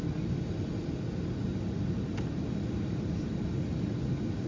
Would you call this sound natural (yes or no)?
yes